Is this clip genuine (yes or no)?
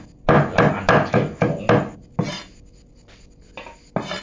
yes